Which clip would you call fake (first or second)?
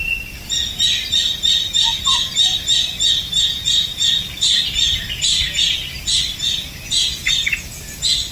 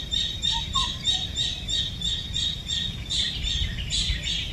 second